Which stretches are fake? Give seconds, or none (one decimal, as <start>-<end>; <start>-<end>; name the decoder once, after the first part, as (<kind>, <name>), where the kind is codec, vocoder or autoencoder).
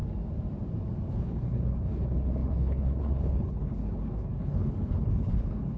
1.1-5.8 (codec, HILCodec)